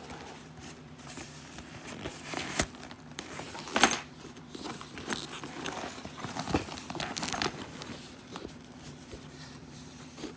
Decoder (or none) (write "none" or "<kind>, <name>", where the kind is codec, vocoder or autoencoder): vocoder, BigVGAN v2